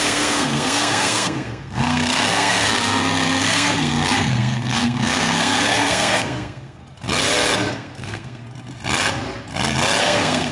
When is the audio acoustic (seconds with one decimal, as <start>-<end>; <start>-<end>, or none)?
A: 6.8-7.7; 8.4-10.0